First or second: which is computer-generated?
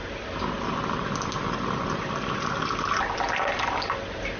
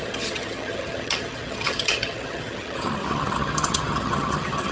second